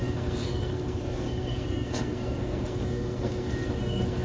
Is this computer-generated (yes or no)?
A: yes